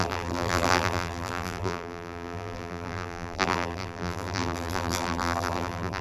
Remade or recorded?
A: remade